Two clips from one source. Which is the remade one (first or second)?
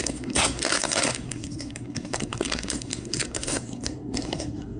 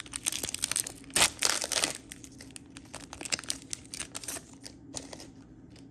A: first